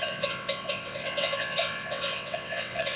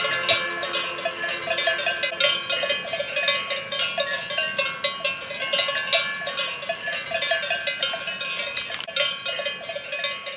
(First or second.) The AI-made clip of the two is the first